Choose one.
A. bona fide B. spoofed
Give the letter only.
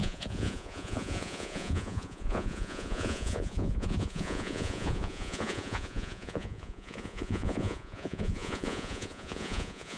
B